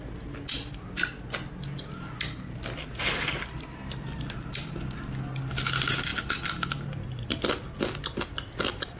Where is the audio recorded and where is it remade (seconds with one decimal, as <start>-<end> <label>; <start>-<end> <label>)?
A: 0.0-9.0 recorded